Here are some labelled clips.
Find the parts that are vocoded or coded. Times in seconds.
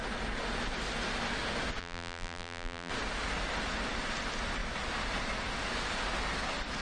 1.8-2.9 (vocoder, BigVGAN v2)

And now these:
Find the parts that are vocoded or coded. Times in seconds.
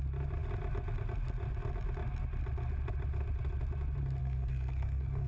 4.2-5.3 (codec, SNAC)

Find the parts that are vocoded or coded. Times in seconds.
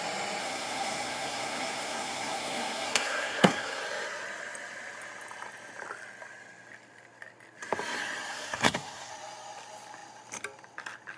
0.4-3.8 (codec, SNAC); 8.3-9.1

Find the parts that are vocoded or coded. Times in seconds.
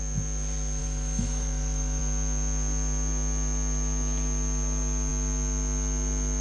0.8-2.0 (autoencoder, DAC-VAE)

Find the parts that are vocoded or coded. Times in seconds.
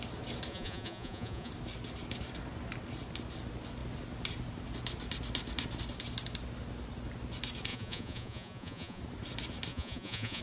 0.5-1.5 (vocoder, Vocos); 7.7-9.0; 9.7-10.4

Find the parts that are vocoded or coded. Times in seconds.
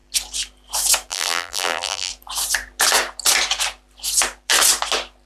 1.1-2.1 (vocoder, BigVGAN v2)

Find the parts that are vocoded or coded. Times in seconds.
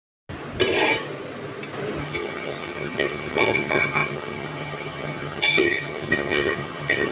2.0-7.1 (vocoder, HiFi-GAN)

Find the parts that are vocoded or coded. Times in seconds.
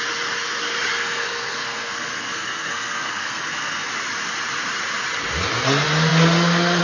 0.9-3.9 (codec, SNAC)